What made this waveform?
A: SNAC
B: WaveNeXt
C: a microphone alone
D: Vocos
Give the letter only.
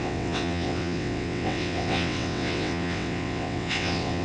B